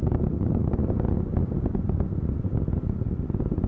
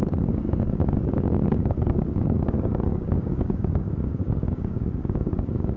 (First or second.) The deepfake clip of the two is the second